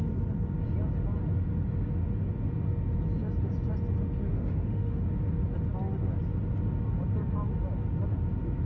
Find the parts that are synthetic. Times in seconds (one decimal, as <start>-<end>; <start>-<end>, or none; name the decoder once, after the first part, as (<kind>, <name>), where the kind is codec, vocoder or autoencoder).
4.3-5.0 (autoencoder, DAC-VAE)